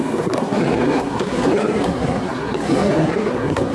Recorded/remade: remade